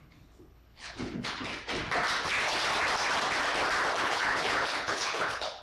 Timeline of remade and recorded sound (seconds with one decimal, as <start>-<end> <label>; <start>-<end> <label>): 0.0-1.5 remade; 1.5-4.0 recorded; 4.0-5.6 remade